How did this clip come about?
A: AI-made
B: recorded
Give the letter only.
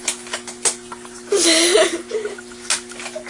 B